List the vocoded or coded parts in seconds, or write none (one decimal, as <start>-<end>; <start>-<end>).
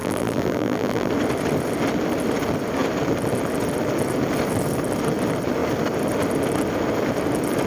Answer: 0.0-1.1